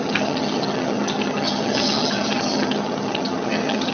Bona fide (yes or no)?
no